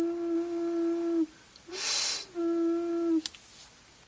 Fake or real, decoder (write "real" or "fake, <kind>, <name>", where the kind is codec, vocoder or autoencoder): real